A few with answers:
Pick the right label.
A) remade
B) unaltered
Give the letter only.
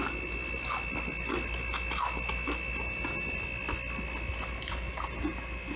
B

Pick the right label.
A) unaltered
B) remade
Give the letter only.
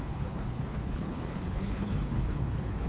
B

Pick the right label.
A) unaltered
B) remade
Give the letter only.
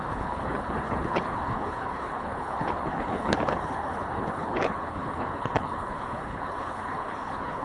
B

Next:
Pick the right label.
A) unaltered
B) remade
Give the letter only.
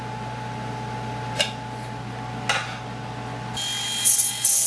A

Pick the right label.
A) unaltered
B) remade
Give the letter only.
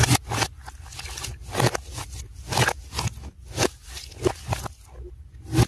A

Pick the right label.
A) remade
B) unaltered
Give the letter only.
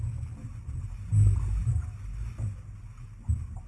B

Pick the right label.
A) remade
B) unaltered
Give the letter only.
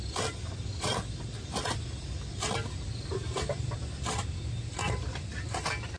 B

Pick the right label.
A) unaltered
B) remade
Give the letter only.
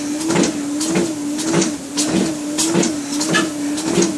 A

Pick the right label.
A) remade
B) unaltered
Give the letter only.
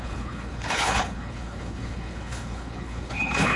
A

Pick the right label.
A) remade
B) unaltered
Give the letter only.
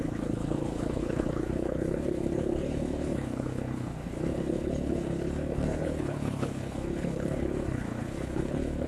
A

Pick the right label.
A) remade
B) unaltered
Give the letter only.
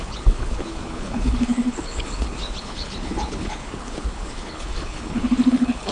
A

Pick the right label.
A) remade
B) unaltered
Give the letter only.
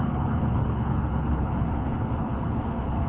A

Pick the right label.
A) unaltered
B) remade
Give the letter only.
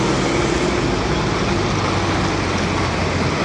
A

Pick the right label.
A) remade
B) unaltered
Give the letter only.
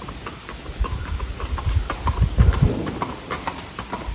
B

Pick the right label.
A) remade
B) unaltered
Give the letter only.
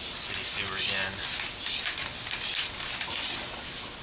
B